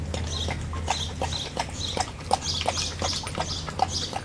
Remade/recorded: recorded